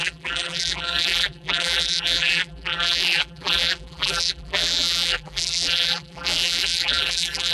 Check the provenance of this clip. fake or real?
fake